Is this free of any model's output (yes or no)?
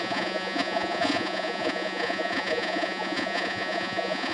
no